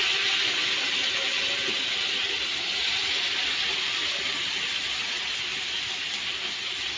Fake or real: real